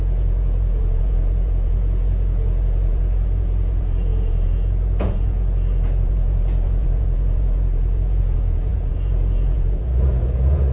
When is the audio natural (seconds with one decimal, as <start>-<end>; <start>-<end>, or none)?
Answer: none